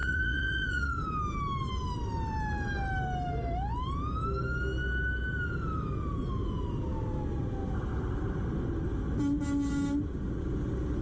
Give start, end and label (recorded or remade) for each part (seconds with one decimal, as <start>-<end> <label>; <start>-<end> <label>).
0.0-1.0 remade; 1.0-11.0 recorded

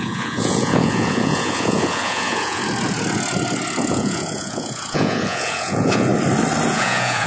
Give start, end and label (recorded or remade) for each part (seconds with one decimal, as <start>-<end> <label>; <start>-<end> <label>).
0.0-2.6 remade; 2.6-3.9 recorded; 3.9-6.1 remade; 6.1-6.7 recorded; 6.7-7.3 remade

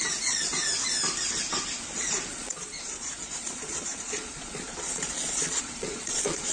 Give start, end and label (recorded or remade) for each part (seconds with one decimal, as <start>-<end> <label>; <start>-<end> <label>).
0.0-2.3 recorded; 2.3-6.5 remade

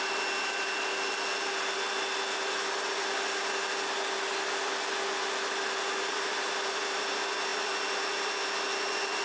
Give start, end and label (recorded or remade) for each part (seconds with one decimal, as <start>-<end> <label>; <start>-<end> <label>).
0.0-9.2 recorded